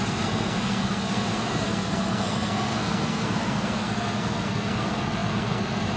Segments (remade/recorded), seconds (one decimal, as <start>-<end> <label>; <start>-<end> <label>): 0.0-6.0 remade